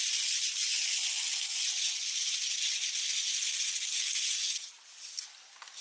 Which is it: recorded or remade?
recorded